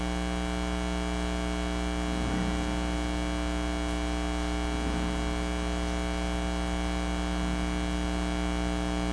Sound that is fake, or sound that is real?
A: real